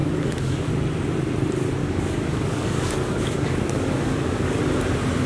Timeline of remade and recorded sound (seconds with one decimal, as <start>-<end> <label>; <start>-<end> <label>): 0.0-0.7 remade; 0.7-1.8 recorded; 1.8-4.6 remade; 4.6-5.3 recorded